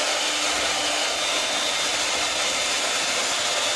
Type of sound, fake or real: real